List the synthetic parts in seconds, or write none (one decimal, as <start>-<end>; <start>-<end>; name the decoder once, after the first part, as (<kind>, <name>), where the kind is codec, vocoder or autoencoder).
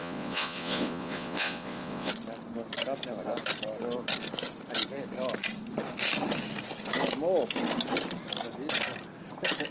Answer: 0.0-2.1 (vocoder, Vocos)